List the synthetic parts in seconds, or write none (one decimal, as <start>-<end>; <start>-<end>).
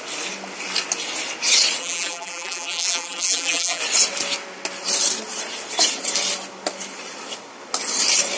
1.8-3.8